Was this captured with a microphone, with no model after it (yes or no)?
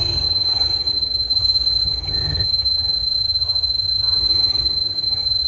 no